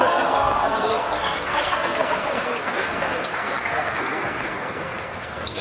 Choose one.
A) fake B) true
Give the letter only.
A